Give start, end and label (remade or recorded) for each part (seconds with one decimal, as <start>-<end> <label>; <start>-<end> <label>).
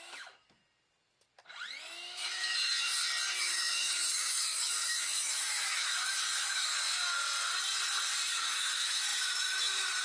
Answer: 0.0-0.6 remade; 0.6-1.8 recorded; 1.8-2.9 remade; 2.9-3.4 recorded; 3.4-6.7 remade; 6.7-8.3 recorded; 8.3-10.0 remade